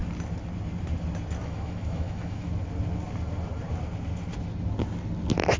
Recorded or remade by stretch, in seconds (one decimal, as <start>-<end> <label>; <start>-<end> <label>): 0.0-1.4 recorded; 1.4-2.5 remade; 2.5-5.6 recorded